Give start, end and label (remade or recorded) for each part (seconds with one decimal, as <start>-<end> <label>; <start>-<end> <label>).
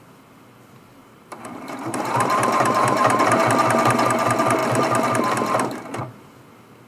0.0-1.0 recorded; 1.0-3.4 remade; 3.4-6.9 recorded